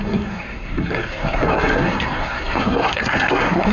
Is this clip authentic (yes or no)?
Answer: no